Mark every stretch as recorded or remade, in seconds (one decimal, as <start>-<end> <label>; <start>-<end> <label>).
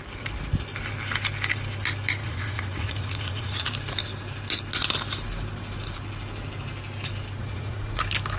0.0-2.2 recorded; 2.2-3.7 remade; 3.7-7.4 recorded; 7.4-8.0 remade; 8.0-8.4 recorded